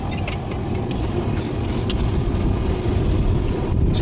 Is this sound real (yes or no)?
yes